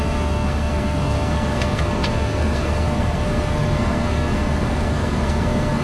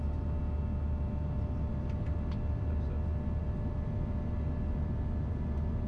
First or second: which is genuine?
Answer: second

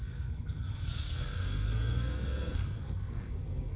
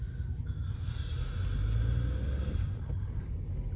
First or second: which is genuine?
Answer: second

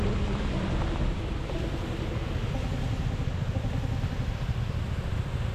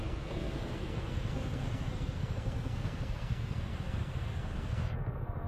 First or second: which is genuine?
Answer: first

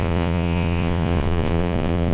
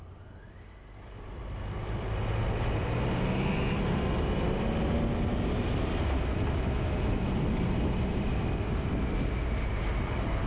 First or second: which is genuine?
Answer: second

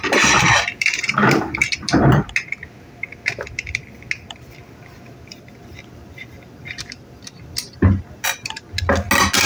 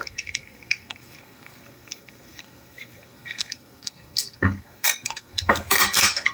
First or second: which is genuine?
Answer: first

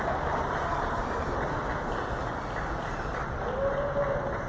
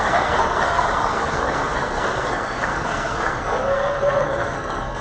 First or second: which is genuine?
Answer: first